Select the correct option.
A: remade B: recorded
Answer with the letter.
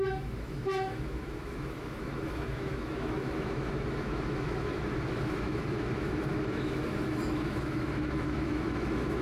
A